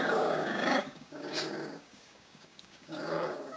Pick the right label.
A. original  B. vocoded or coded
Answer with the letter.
B